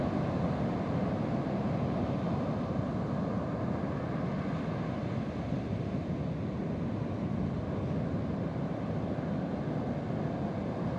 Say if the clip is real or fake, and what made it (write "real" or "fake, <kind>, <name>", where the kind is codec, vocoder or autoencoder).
real